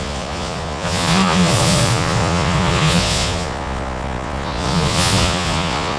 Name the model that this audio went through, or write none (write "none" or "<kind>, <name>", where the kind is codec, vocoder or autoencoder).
vocoder, Vocos